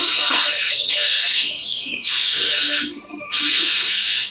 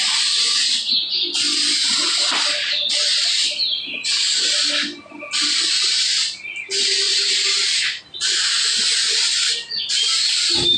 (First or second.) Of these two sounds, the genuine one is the second